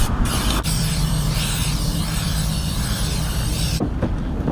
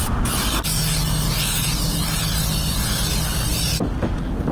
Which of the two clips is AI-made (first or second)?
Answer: first